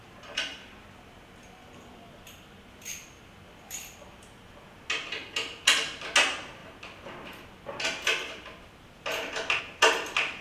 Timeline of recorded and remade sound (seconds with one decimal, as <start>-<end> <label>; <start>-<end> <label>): 0.0-10.4 recorded